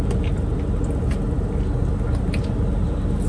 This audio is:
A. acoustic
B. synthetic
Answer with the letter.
A